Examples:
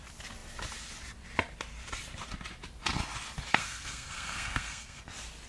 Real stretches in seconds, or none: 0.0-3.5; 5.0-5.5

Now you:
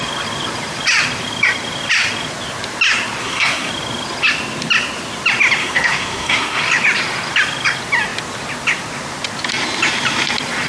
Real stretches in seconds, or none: 0.0-3.2; 3.7-5.6; 6.6-10.7

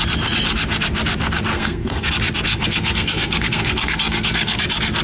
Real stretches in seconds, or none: 0.0-1.5; 2.1-2.5; 4.6-5.0

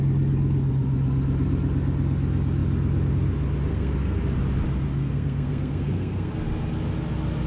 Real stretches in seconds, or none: 0.0-3.7; 4.2-5.0; 6.3-7.5